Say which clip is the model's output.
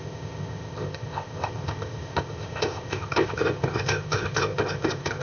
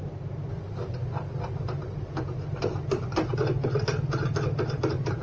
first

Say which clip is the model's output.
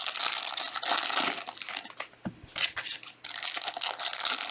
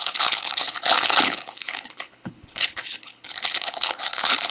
second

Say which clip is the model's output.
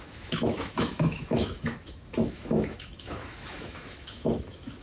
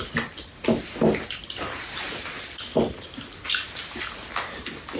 first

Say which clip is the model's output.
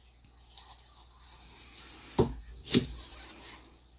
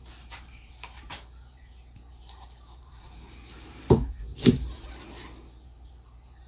second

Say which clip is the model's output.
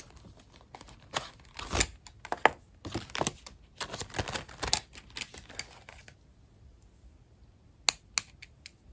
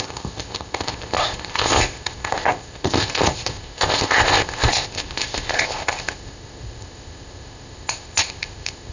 second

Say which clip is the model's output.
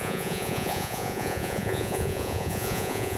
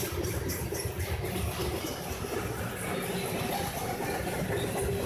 first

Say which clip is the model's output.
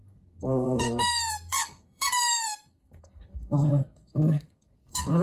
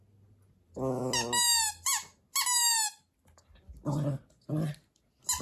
first